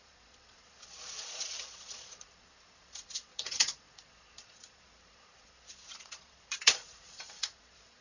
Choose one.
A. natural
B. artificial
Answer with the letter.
B